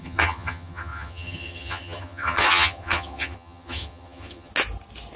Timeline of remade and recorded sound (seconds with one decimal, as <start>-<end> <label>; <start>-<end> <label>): 0.0-4.5 remade; 4.5-5.2 recorded